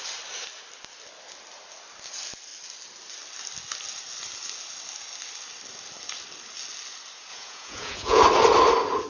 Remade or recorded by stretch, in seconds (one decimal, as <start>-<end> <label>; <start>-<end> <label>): 0.0-7.3 recorded; 7.3-8.2 remade; 8.2-9.1 recorded